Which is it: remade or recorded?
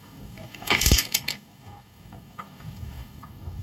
remade